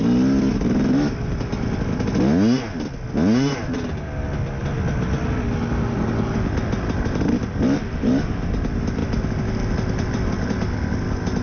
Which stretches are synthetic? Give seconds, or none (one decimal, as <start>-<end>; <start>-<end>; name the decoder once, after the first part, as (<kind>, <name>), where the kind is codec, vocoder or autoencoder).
none